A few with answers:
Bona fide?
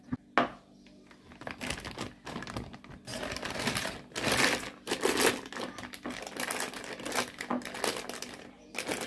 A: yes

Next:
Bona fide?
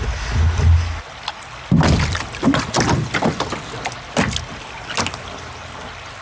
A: yes